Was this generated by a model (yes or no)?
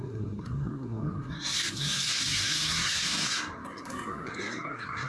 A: yes